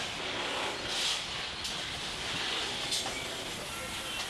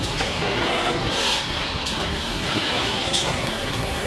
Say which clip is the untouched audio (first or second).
first